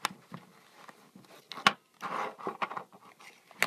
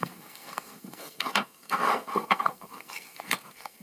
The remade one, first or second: second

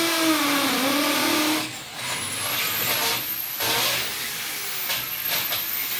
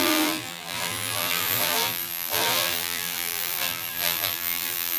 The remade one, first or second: second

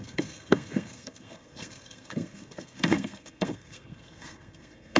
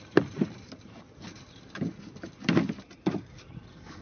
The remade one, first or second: first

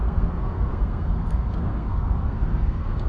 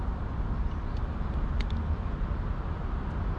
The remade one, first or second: first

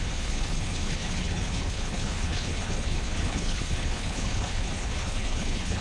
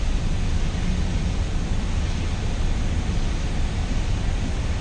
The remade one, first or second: first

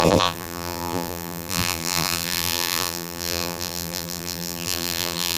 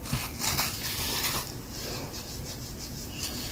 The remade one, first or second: first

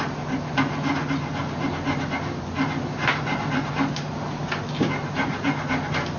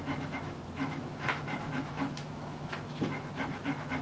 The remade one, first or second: second